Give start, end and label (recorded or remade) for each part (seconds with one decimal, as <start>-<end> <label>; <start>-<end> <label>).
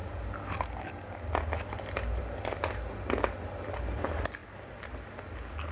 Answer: 0.0-5.7 recorded